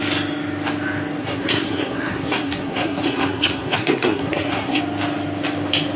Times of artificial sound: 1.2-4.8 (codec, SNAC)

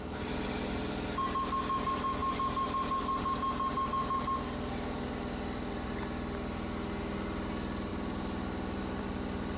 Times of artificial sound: none

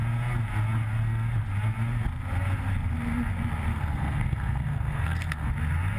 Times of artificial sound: 3.7-5.5 (codec, SNAC)

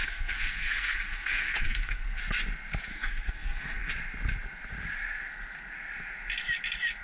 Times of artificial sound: 0.0-2.2 (codec, SNAC); 2.9-3.9

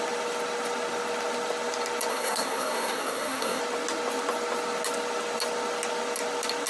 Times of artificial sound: 2.1-3.6 (codec, SNAC)

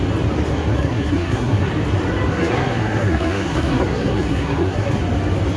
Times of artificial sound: 0.5-1.7 (codec, SNAC); 2.3-5.0

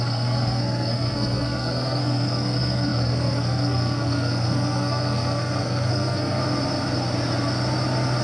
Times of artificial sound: 0.0-6.4 (codec, SNAC)

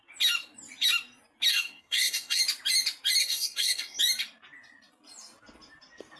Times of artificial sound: 1.5-2.4 (codec, SNAC); 3.2-4.0